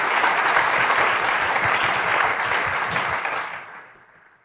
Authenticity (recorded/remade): remade